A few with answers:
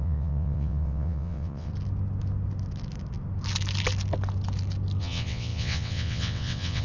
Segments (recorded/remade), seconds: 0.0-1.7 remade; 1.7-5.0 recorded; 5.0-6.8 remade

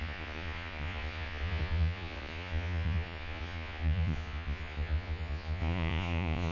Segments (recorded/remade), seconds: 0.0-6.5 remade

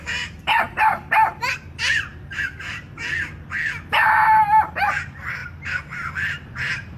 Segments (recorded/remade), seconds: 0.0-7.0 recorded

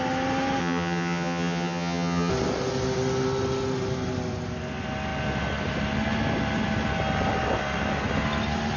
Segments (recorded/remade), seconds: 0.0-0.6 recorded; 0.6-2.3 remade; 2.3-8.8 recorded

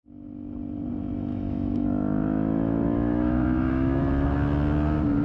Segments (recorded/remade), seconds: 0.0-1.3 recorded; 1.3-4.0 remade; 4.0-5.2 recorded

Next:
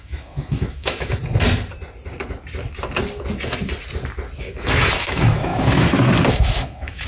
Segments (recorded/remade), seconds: 0.0-1.2 remade; 1.2-4.4 recorded; 4.4-5.5 remade; 5.5-6.3 recorded; 6.3-7.1 remade